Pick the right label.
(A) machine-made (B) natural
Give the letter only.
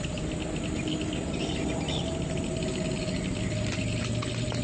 B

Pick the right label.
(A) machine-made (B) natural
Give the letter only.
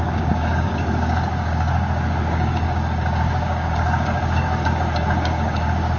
A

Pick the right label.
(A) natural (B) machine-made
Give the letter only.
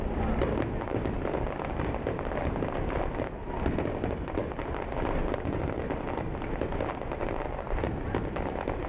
A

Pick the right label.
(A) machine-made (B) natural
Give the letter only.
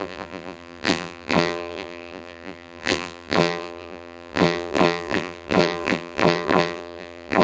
A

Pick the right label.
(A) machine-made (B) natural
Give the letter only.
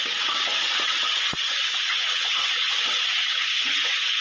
A